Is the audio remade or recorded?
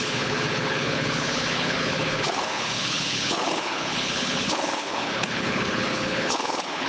remade